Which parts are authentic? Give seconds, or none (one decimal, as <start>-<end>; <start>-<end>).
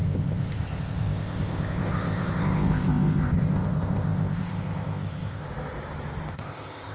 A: 5.4-6.3